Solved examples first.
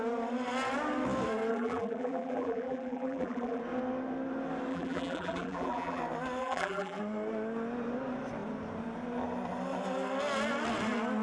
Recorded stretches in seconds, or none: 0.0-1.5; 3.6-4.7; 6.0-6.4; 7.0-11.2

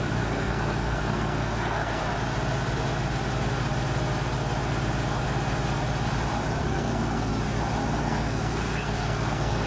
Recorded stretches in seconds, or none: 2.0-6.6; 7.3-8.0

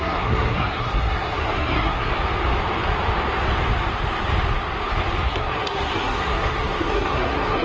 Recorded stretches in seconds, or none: 2.1-5.2

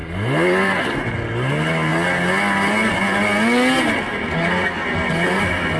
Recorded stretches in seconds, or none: 0.0-5.8

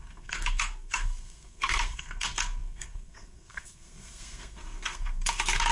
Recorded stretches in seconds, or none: none